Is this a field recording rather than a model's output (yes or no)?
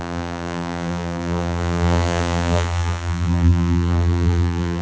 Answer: no